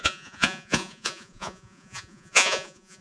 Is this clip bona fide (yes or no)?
no